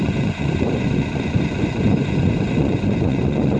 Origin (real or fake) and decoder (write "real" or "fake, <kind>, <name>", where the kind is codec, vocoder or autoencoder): fake, vocoder, Vocos